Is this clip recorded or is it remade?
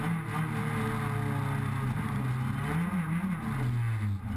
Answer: recorded